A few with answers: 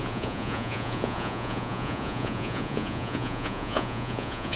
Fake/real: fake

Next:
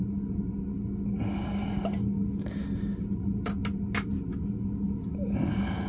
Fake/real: real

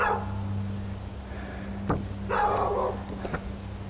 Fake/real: real